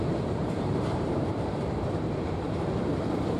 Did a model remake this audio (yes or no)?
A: yes